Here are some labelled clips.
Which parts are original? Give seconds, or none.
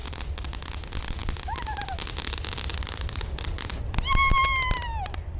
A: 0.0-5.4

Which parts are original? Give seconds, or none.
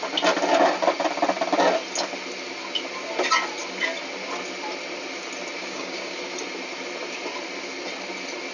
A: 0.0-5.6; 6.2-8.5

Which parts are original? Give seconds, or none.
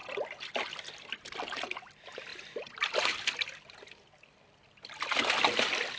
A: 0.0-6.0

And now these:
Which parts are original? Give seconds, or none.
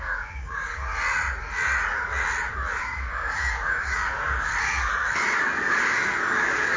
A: 0.9-2.8; 4.5-5.7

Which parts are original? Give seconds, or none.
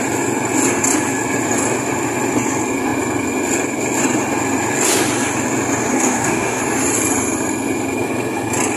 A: 0.0-5.9; 6.6-8.8